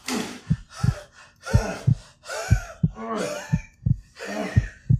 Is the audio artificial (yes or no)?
no